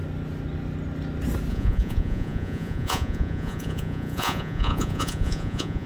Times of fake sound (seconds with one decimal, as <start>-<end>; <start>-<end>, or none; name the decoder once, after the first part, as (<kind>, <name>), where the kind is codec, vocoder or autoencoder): 1.5-5.9 (vocoder, Vocos)